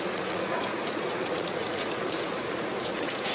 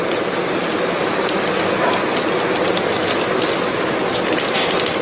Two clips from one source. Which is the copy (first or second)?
first